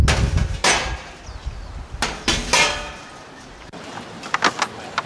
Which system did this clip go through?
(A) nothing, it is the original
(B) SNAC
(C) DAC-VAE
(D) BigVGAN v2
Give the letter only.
A